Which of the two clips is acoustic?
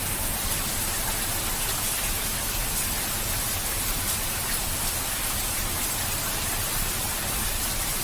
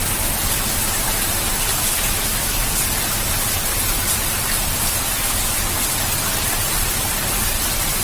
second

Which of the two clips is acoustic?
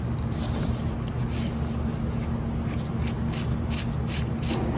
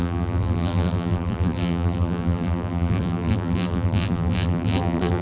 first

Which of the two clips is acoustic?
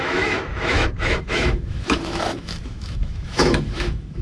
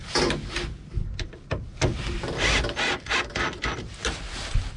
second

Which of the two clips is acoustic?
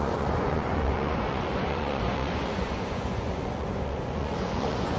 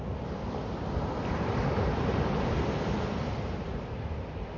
second